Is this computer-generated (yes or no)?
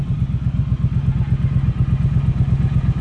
no